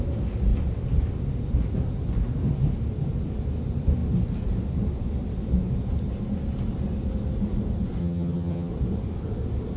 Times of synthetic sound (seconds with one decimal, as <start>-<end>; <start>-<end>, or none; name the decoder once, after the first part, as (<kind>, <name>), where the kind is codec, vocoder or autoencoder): 8.0-8.7 (vocoder, HiFi-GAN)